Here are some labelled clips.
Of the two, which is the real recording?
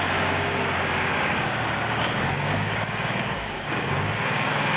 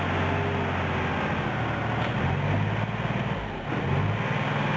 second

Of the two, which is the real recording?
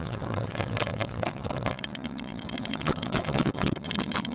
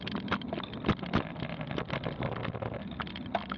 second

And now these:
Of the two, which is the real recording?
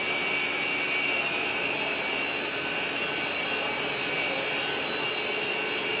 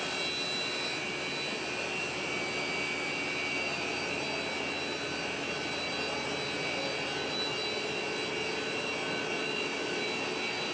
second